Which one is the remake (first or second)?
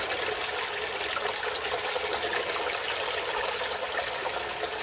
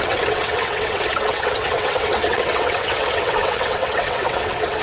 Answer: second